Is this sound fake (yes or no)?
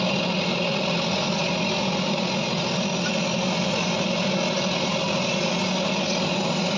no